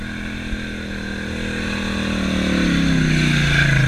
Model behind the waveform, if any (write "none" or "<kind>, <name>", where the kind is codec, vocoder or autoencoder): none